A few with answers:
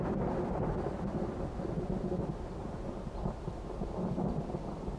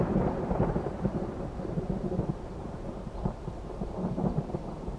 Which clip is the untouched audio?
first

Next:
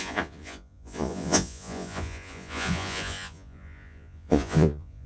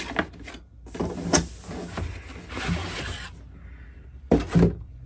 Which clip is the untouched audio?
second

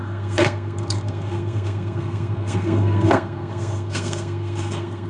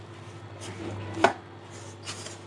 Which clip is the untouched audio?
second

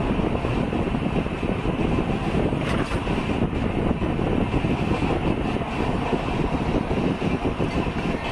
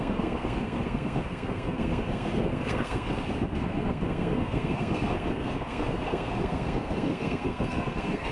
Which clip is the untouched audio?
first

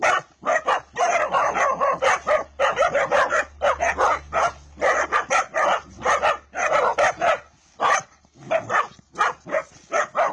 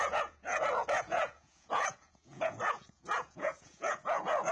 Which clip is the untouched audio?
first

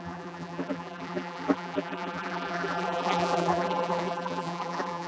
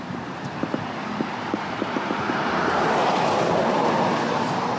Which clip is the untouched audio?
second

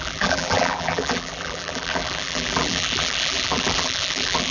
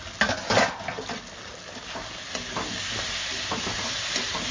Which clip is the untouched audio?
second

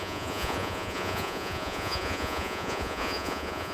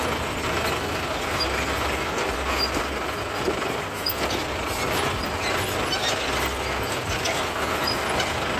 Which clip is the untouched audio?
second